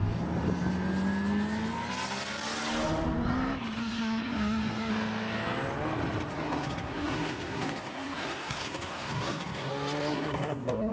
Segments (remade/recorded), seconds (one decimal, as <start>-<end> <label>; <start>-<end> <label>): 0.0-3.8 recorded; 3.8-4.9 remade; 4.9-6.3 recorded; 6.3-9.7 remade; 9.7-10.1 recorded; 10.1-10.9 remade